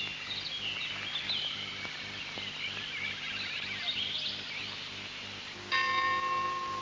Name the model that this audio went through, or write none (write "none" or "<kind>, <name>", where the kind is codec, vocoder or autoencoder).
none